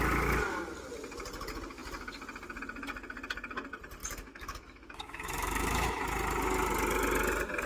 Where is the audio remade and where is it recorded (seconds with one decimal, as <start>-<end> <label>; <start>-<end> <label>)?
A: 0.0-4.0 recorded; 4.0-6.0 remade; 6.0-7.7 recorded